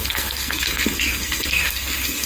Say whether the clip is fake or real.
fake